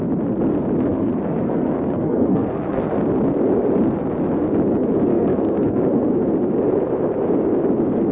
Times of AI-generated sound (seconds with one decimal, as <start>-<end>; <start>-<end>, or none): 0.9-2.9; 5.1-6.1